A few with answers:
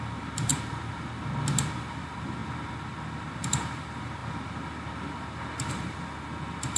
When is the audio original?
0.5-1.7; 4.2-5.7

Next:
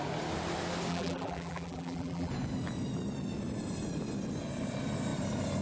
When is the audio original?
0.0-0.9; 2.3-5.6

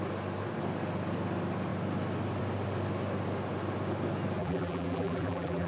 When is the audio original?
0.0-4.4

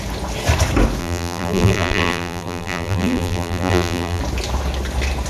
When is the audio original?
0.0-1.0; 4.2-5.3

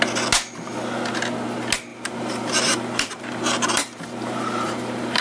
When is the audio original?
0.0-1.9

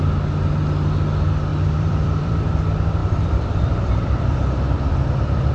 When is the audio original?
0.0-1.5; 2.5-3.0; 4.4-5.5